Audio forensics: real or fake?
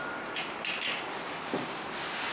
real